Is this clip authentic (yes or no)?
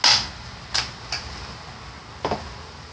yes